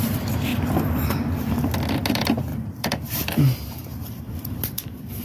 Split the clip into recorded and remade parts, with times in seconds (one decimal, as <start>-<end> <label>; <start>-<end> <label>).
0.0-0.5 remade; 0.5-2.1 recorded; 2.1-5.2 remade

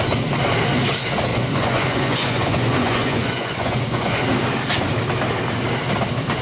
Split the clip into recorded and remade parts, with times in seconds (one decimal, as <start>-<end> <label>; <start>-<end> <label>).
0.0-1.3 recorded; 1.3-4.2 remade; 4.2-6.4 recorded

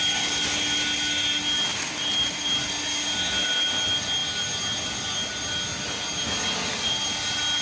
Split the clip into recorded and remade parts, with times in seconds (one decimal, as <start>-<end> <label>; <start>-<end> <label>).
0.0-1.7 recorded; 1.7-2.4 remade; 2.4-7.6 recorded

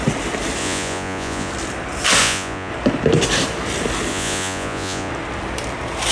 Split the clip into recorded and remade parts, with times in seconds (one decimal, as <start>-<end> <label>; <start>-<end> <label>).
0.0-0.6 recorded; 0.6-1.5 remade; 1.5-2.2 recorded; 2.2-2.7 remade; 2.7-4.1 recorded; 4.1-5.1 remade; 5.1-6.1 recorded

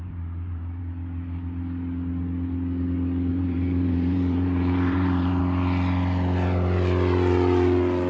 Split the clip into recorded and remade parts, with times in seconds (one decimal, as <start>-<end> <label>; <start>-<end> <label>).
0.0-0.8 remade; 0.8-3.3 recorded; 3.3-5.4 remade; 5.4-8.1 recorded

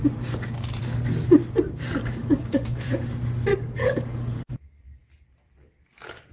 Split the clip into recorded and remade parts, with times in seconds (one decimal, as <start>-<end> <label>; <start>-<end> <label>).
0.0-2.0 recorded; 2.0-2.9 remade; 2.9-3.5 recorded; 3.5-5.0 remade; 5.0-6.3 recorded

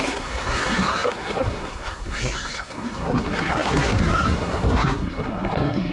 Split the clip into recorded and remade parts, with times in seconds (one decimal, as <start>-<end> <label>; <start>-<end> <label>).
0.0-5.9 remade

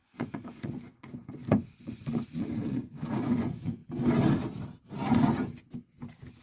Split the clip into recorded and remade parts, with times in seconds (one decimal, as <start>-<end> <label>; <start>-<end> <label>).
0.0-3.8 remade; 3.8-4.9 recorded; 4.9-5.6 remade; 5.6-6.4 recorded